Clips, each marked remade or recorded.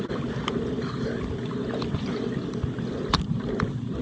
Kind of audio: recorded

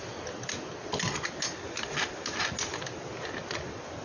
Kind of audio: recorded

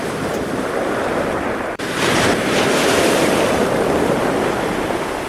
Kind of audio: recorded